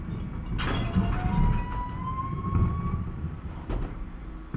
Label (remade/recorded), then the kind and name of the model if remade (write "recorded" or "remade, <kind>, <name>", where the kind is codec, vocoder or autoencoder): recorded